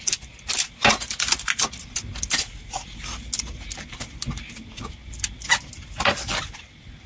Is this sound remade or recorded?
recorded